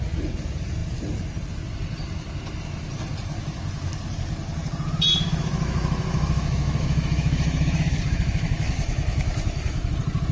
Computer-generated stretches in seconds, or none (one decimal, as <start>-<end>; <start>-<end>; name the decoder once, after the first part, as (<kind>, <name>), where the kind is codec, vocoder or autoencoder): 5.1-9.9 (autoencoder, DAC-VAE)